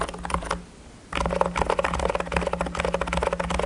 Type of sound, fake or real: real